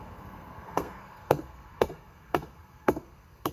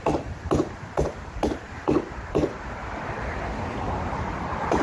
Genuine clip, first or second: second